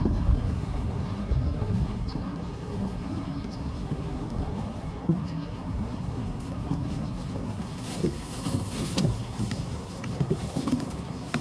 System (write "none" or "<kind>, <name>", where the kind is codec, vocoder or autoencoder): codec, SNAC